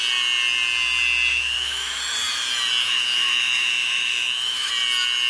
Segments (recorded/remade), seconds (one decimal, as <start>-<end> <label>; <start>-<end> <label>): 0.0-1.3 recorded; 1.3-2.0 remade; 2.0-2.8 recorded; 2.8-4.7 remade; 4.7-5.3 recorded